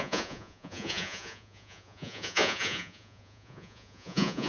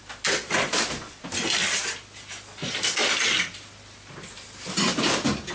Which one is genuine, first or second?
second